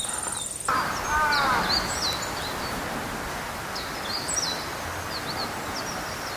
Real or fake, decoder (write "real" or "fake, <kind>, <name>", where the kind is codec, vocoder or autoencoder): real